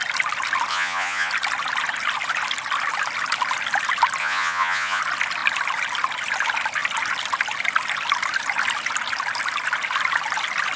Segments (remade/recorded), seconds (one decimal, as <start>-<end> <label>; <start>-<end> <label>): 0.0-0.7 recorded; 0.7-1.3 remade; 1.3-4.2 recorded; 4.2-5.0 remade; 5.0-10.8 recorded